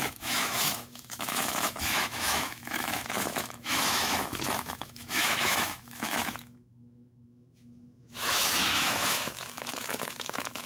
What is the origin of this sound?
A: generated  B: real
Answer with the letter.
A